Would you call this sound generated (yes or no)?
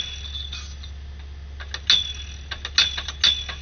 no